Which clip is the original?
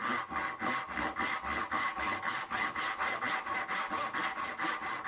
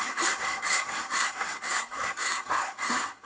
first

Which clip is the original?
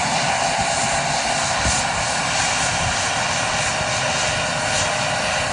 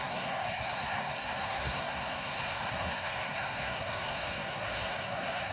first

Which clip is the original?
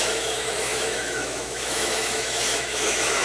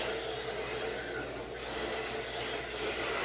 second